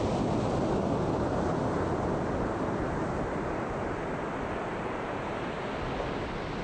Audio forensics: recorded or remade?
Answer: recorded